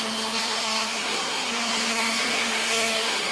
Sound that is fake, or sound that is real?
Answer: fake